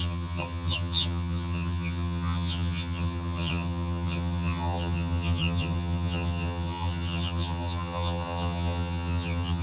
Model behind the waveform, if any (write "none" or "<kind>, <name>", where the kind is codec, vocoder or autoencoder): vocoder, HiFi-GAN